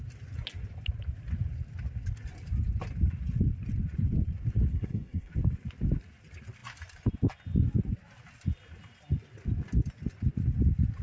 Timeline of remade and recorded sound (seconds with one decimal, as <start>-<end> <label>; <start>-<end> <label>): 0.0-4.7 recorded; 4.7-5.3 remade; 5.3-11.0 recorded